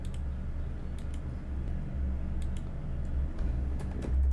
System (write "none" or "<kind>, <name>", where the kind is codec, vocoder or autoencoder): none